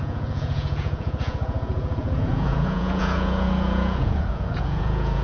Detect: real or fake fake